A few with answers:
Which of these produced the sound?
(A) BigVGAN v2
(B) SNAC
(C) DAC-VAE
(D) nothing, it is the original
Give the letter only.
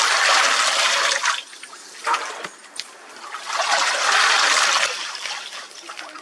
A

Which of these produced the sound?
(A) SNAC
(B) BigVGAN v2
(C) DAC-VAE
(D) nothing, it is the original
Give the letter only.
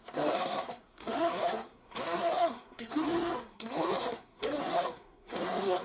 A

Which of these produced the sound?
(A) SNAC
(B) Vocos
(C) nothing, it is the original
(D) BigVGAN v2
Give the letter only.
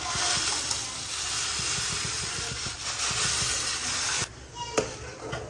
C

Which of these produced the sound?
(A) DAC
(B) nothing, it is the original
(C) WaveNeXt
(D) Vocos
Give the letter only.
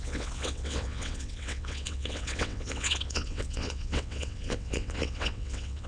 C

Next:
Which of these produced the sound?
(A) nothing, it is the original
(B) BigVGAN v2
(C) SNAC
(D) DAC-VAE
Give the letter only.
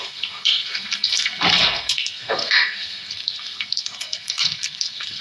C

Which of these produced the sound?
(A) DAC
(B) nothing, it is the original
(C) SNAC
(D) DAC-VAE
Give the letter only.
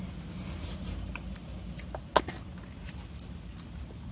B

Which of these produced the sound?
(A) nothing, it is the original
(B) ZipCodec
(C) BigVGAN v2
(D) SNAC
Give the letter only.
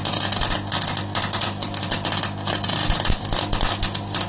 A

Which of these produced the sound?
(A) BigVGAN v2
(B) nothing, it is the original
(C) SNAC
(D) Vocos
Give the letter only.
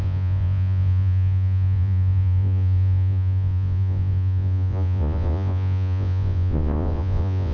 D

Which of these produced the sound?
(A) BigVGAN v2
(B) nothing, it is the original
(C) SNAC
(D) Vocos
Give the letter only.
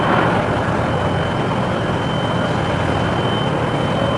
B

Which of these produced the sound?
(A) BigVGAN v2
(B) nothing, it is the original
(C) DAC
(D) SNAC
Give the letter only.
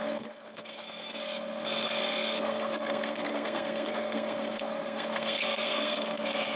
D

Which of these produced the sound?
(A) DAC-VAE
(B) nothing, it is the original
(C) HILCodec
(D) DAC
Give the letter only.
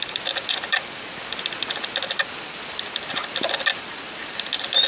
B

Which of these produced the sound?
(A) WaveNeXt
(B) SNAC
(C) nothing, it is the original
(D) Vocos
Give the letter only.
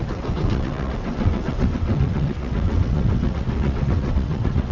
A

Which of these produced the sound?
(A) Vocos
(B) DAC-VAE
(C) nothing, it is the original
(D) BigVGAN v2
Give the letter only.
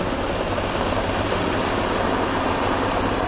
D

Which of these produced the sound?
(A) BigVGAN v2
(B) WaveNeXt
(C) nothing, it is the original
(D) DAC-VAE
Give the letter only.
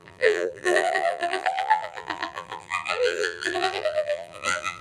A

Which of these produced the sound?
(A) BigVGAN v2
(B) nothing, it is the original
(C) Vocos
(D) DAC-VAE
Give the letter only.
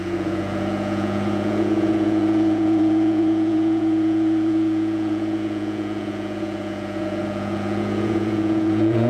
C